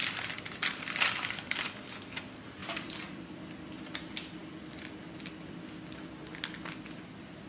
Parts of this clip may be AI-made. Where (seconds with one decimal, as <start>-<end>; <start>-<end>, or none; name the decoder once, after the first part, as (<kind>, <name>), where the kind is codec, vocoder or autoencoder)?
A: 0.0-1.6 (vocoder, BigVGAN v2); 2.6-3.5